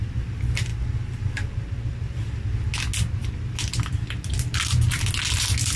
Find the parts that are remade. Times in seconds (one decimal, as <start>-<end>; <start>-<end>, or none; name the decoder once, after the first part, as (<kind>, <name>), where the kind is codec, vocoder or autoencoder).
none